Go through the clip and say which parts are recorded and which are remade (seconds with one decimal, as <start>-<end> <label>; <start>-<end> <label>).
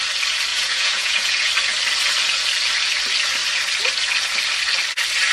0.0-0.5 recorded; 0.5-1.5 remade; 1.5-5.3 recorded